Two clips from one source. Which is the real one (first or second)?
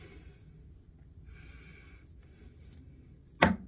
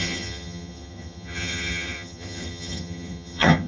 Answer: first